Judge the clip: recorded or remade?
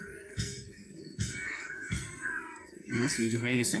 remade